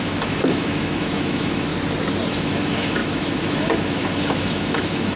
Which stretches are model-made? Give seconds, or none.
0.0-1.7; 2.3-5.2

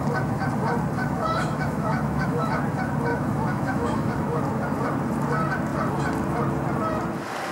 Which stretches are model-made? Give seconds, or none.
1.0-2.6; 3.1-4.4

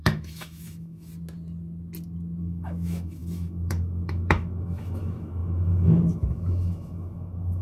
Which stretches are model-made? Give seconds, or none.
0.0-1.1; 2.4-7.6

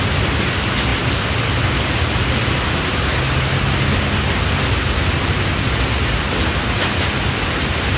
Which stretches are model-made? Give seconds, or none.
none

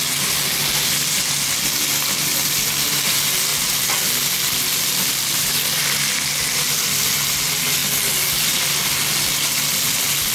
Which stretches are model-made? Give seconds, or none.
none

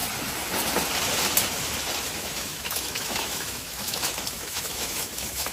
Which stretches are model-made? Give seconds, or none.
2.1-5.5

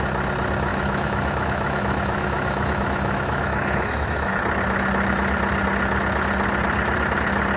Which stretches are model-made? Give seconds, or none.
0.7-4.3

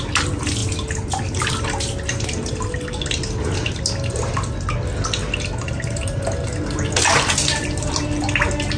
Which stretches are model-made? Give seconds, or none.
none